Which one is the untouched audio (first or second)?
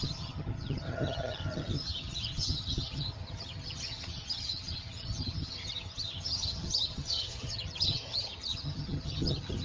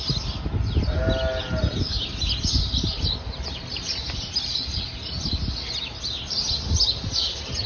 second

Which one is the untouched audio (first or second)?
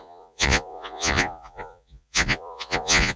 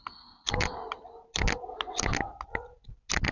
second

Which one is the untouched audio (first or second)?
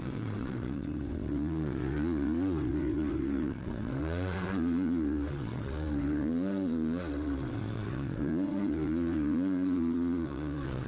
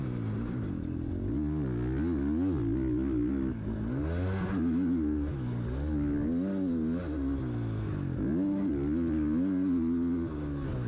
second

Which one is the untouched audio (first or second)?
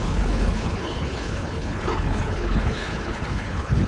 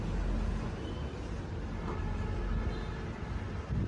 second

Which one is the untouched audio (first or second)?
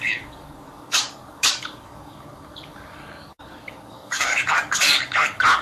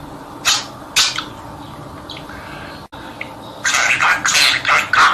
second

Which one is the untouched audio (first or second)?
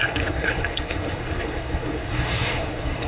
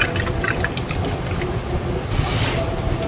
second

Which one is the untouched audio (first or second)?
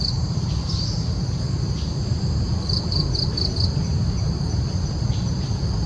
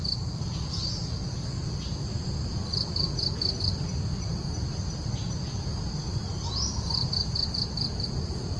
second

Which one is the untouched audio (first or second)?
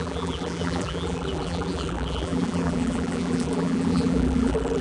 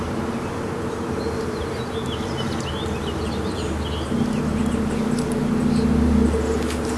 second